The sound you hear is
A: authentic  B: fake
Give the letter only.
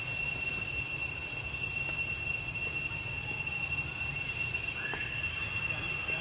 A